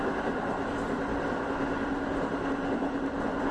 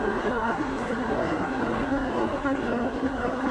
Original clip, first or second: first